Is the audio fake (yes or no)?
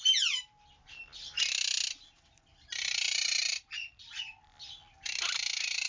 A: no